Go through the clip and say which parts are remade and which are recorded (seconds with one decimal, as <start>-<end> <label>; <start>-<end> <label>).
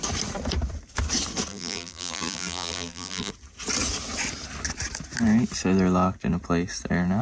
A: 0.0-1.5 recorded; 1.5-3.3 remade; 3.3-7.2 recorded